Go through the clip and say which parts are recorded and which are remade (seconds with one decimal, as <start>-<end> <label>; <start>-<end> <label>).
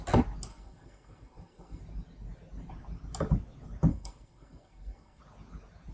0.0-0.5 recorded; 0.5-1.8 remade; 1.8-3.9 recorded; 3.9-5.2 remade; 5.2-5.9 recorded